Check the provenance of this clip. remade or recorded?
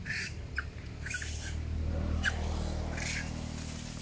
recorded